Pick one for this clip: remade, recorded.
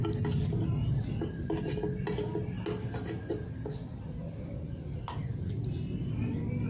recorded